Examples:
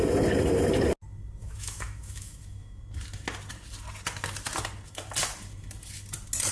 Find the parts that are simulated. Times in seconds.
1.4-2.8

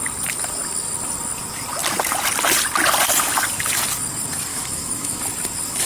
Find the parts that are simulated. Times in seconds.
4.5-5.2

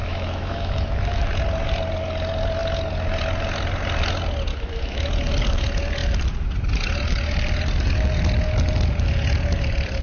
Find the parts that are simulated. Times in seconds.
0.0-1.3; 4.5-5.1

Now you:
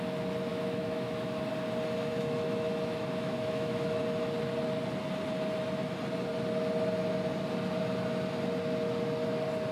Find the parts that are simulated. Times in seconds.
0.5-1.5; 2.1-4.0